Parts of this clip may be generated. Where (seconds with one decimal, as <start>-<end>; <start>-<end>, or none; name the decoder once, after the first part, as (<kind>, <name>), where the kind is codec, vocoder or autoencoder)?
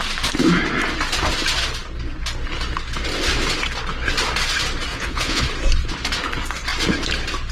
4.9-5.4 (vocoder, Vocos)